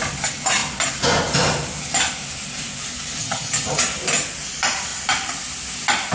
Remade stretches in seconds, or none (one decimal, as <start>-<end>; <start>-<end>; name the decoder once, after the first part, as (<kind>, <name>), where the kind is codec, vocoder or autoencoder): 3.2-3.8 (vocoder, HiFi-GAN)

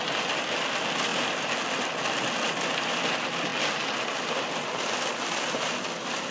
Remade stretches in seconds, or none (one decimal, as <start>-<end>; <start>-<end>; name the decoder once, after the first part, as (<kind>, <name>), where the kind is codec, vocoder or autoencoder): none

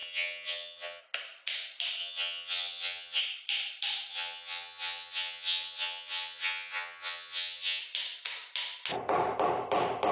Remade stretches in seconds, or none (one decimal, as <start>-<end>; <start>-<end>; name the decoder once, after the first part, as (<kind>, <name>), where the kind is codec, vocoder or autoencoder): 0.0-1.0 (vocoder, HiFi-GAN); 2.0-3.2; 4.1-7.8

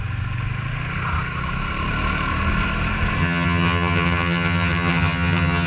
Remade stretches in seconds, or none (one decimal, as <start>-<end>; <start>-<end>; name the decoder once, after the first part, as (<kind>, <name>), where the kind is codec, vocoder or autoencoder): 3.2-5.7 (vocoder, HiFi-GAN)